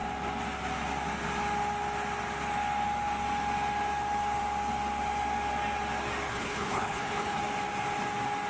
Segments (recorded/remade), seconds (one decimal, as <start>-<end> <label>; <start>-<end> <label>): 0.0-6.3 recorded; 6.3-7.4 remade; 7.4-8.5 recorded